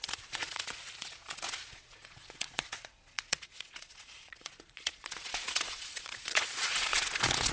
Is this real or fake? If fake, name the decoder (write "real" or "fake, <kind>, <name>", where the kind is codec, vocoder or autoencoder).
fake, vocoder, Vocos